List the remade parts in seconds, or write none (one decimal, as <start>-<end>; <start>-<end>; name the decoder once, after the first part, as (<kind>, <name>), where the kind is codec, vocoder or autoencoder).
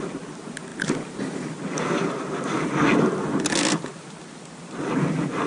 none